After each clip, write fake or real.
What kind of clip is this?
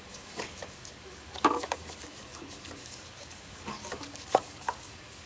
fake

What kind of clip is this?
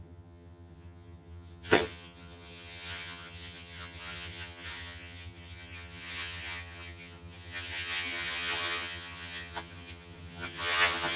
fake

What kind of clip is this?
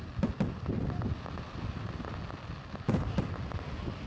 real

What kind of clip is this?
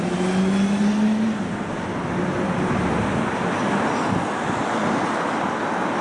real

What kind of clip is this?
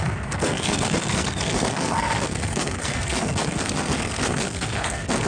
fake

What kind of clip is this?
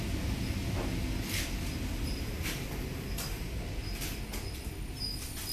real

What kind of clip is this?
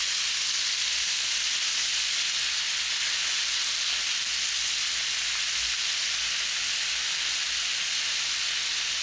real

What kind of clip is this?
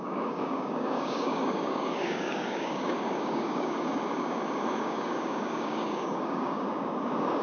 fake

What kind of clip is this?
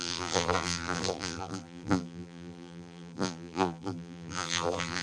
fake